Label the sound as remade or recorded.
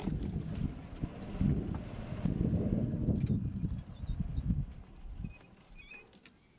recorded